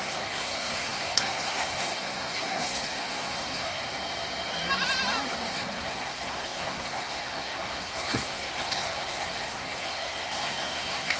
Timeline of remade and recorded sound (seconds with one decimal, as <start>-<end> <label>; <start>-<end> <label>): 0.0-3.8 remade; 3.8-5.5 recorded; 5.5-11.2 remade